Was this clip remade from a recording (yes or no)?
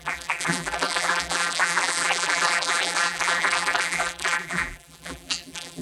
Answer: yes